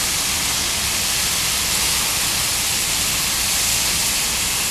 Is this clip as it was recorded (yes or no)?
yes